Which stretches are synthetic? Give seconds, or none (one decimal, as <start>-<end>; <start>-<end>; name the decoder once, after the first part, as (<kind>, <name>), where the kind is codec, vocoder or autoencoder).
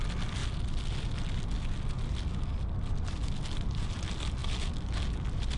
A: none